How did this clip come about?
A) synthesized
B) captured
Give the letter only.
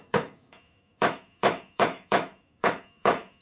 A